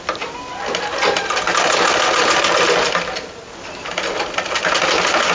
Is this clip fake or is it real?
real